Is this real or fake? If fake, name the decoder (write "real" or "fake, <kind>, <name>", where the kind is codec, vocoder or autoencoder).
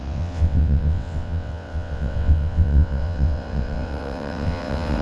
fake, vocoder, WaveNeXt